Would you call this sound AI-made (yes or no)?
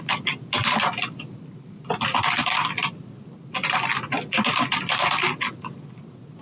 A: no